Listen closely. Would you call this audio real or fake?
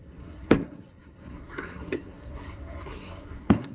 fake